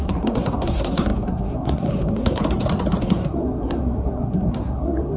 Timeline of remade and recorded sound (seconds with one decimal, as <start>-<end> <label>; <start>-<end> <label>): 0.0-2.4 remade; 2.4-3.0 recorded; 3.0-5.2 remade

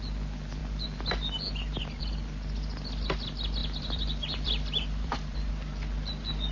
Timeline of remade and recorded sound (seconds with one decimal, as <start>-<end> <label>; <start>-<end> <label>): 0.0-3.6 recorded; 3.6-5.5 remade; 5.5-6.5 recorded

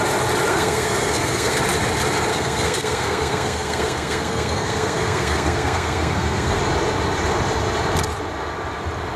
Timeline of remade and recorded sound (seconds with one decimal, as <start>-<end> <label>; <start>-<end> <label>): 0.0-0.5 recorded; 0.5-1.6 remade; 1.6-2.3 recorded; 2.3-6.6 remade; 6.6-9.2 recorded

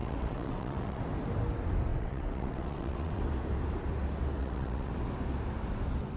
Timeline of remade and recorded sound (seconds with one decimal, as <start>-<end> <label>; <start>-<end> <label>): 0.0-1.0 remade; 1.0-1.9 recorded; 1.9-3.2 remade; 3.2-4.4 recorded; 4.4-4.9 remade; 4.9-6.2 recorded